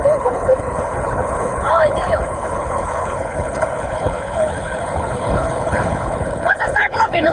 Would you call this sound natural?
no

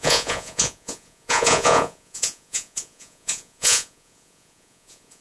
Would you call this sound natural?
no